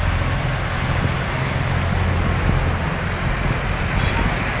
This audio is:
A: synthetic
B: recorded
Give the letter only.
B